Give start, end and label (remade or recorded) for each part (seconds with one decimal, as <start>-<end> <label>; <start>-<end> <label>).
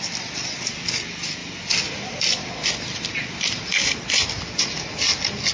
0.0-5.5 recorded